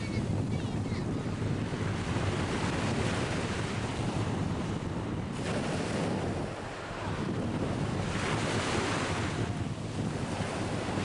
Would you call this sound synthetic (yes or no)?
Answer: no